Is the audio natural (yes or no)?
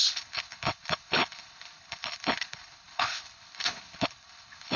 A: no